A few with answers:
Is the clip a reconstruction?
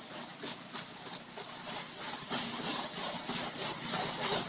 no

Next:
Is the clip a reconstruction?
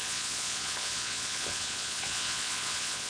yes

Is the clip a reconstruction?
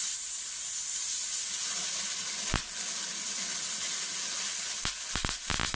no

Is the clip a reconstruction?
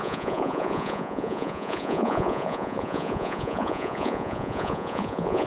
yes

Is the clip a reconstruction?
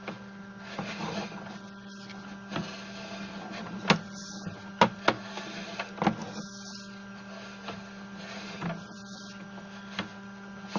no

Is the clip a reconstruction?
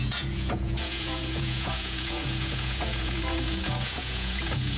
yes